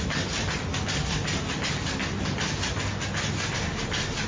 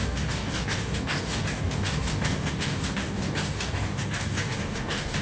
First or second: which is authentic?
first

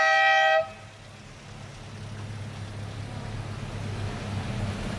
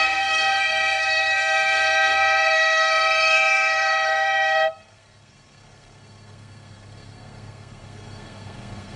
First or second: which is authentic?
first